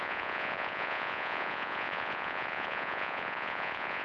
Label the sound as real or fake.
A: fake